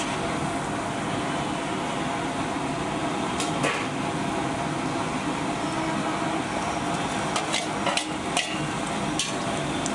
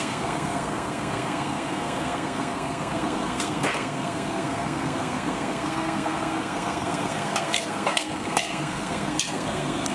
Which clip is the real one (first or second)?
first